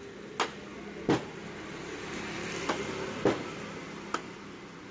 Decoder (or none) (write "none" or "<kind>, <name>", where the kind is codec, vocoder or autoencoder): none